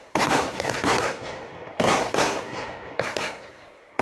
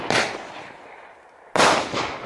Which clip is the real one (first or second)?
second